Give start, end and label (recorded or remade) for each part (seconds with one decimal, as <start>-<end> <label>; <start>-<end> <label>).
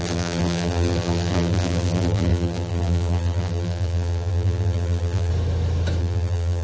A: 0.0-5.3 remade; 5.3-6.0 recorded; 6.0-6.6 remade